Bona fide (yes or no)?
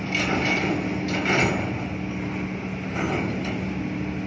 yes